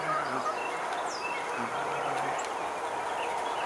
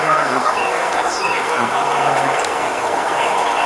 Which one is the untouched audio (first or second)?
first